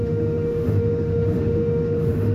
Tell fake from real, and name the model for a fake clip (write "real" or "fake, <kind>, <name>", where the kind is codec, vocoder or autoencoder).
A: fake, autoencoder, DAC-VAE